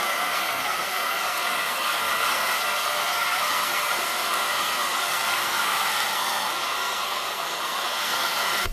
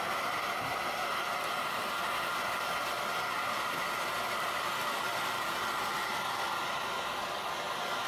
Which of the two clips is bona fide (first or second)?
second